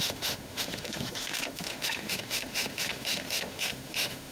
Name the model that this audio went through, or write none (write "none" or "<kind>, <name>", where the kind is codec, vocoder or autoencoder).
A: autoencoder, DAC-VAE